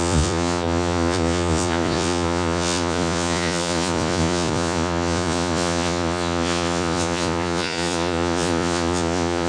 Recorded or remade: remade